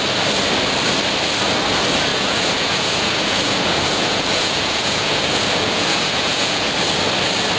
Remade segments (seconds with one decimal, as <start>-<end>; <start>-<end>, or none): 2.1-6.7